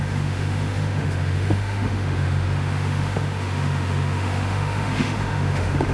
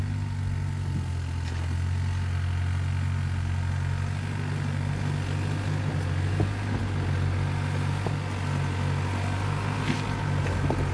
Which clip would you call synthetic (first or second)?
first